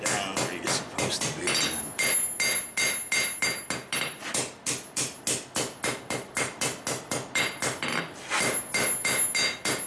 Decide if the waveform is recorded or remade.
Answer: recorded